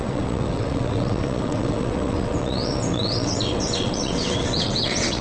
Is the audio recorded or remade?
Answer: remade